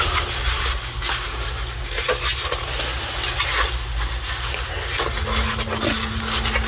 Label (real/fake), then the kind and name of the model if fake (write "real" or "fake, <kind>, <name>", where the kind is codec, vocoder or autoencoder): real